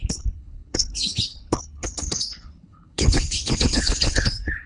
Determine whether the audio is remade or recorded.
remade